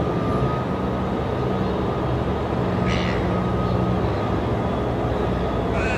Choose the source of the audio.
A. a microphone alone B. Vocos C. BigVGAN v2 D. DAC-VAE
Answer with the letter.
A